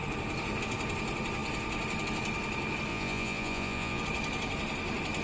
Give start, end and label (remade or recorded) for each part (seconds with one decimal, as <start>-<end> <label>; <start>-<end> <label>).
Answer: 0.0-2.9 recorded; 2.9-4.0 remade; 4.0-5.2 recorded